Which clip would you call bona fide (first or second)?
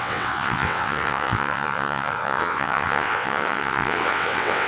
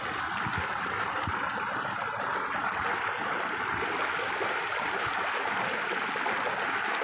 second